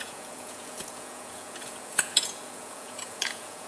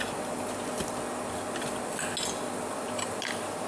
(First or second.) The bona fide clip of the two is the second